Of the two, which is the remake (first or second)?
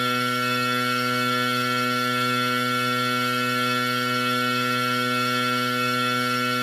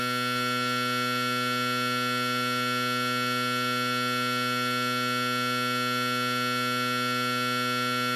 first